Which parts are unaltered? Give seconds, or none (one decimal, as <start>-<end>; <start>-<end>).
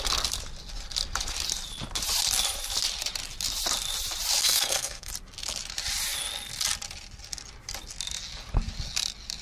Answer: 0.0-4.4; 5.1-9.4